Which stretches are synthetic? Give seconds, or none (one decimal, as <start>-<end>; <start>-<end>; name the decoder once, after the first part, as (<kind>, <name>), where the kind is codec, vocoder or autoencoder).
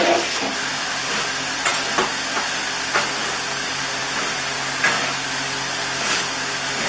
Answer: none